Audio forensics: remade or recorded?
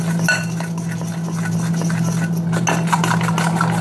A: recorded